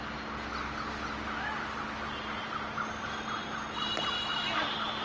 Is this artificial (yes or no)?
no